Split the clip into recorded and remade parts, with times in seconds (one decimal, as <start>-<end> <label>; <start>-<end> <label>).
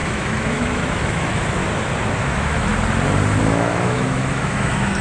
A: 0.0-1.6 remade; 1.6-2.2 recorded; 2.2-2.7 remade; 2.7-3.4 recorded; 3.4-5.0 remade